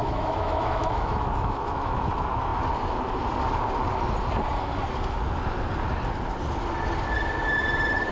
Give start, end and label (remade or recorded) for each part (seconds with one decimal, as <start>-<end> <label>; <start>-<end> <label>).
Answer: 0.0-2.1 remade; 2.1-8.1 recorded